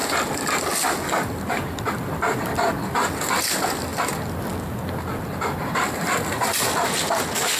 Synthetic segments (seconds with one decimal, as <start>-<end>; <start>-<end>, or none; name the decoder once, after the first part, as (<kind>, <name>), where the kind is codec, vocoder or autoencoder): none